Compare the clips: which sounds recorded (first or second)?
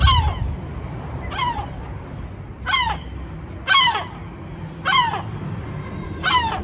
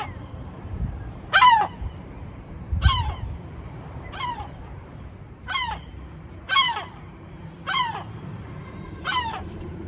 first